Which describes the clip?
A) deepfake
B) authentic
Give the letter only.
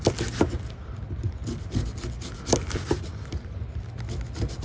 B